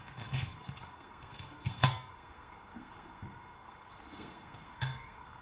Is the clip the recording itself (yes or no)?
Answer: no